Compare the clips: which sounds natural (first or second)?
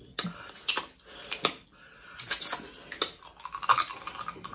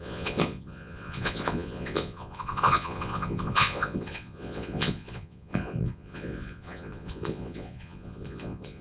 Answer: first